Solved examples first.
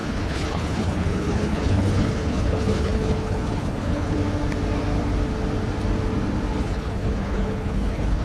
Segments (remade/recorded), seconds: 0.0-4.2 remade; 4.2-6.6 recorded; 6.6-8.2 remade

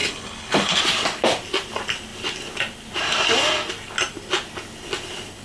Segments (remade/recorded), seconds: 0.0-0.8 remade; 0.8-5.4 recorded

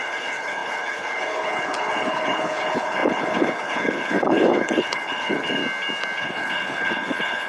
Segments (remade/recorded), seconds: 0.0-5.6 remade; 5.6-6.2 recorded; 6.2-7.5 remade

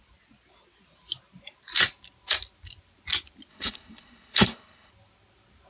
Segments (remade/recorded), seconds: 0.0-3.5 recorded; 3.5-4.9 remade; 4.9-5.7 recorded

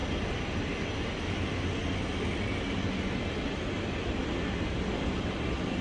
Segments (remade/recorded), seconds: 0.0-5.8 recorded

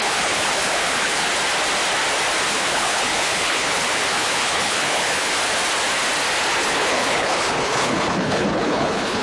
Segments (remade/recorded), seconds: 0.0-1.3 remade; 1.3-2.5 recorded; 2.5-5.3 remade; 5.3-6.6 recorded; 6.6-9.2 remade